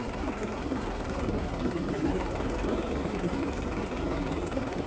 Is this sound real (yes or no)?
no